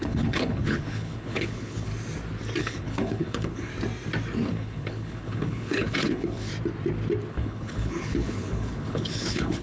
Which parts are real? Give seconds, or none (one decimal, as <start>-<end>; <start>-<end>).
1.9-2.6; 3.7-4.5; 6.5-7.3